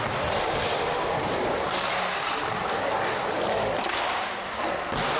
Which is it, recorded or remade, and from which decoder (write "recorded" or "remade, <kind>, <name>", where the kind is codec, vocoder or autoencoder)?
recorded